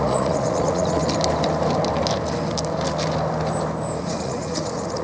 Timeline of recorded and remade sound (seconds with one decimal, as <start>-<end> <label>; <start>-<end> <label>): 0.0-1.0 remade; 1.0-4.0 recorded; 4.0-5.0 remade